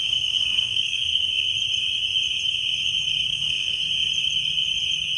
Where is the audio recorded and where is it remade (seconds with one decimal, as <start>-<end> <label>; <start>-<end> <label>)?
0.0-1.5 remade; 1.5-3.3 recorded; 3.3-3.8 remade; 3.8-5.2 recorded